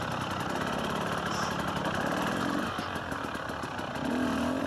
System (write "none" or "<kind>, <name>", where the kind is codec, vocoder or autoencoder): vocoder, BigVGAN v2